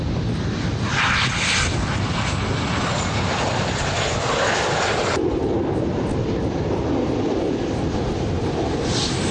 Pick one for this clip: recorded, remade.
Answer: recorded